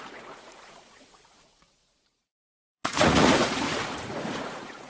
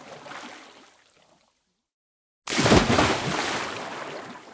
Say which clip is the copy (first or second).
first